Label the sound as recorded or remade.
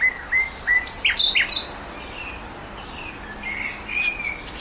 recorded